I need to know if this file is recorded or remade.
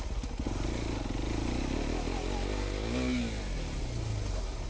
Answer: recorded